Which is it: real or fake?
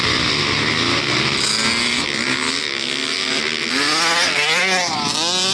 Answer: real